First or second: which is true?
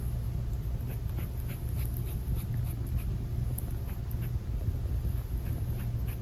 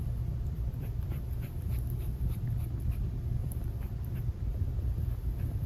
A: first